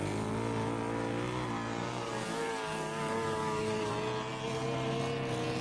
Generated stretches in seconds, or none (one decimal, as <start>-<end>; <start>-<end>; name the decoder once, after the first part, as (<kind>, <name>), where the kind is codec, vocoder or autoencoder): 1.8-3.9 (codec, DAC)